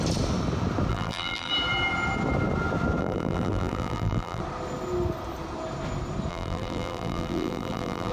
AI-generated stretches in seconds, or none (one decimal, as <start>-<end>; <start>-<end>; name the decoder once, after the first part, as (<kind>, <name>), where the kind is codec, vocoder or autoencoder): 0.9-1.5 (vocoder, BigVGAN v2); 3.0-4.4; 6.3-8.1

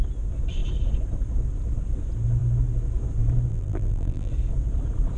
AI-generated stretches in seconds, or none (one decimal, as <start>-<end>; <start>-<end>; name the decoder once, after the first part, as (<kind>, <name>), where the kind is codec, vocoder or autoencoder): 3.5-4.3 (vocoder, BigVGAN v2)

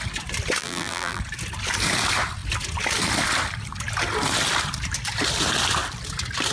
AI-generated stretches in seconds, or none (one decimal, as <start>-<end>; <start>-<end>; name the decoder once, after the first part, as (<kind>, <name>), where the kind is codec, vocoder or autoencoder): 0.6-1.2 (vocoder, BigVGAN v2)

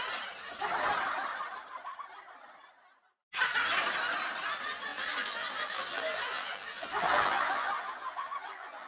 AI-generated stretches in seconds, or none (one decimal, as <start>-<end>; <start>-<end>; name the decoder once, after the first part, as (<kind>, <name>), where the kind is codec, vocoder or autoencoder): 4.9-8.9 (vocoder, BigVGAN v2)

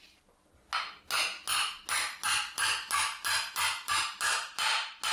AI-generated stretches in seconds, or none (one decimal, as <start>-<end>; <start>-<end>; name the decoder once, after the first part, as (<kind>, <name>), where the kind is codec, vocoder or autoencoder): none

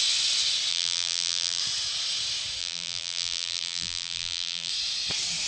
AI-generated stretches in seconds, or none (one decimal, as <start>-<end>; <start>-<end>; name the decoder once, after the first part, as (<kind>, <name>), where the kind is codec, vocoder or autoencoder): 0.7-1.6 (vocoder, BigVGAN v2); 2.6-4.7

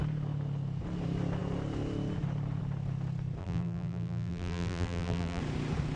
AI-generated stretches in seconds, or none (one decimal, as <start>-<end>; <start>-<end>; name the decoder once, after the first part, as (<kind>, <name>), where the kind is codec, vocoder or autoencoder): 3.4-5.4 (vocoder, BigVGAN v2)

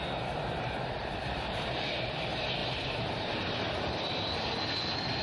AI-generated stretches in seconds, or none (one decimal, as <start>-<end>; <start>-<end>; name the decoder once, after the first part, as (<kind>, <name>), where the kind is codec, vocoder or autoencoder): 2.6-3.7 (vocoder, BigVGAN v2)